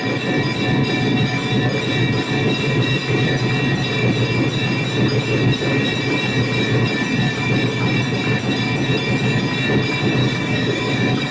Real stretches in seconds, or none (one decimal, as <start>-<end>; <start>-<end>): 0.0-10.2